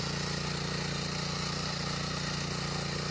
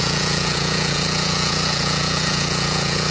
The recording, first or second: first